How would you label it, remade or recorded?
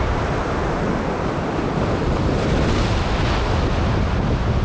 recorded